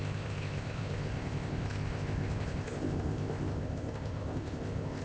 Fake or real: fake